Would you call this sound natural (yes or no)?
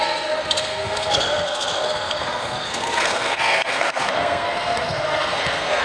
no